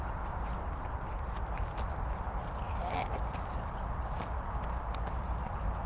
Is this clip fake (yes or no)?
no